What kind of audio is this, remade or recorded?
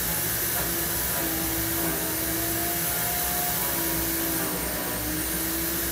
recorded